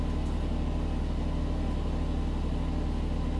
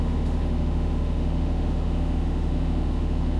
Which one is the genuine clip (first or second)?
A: first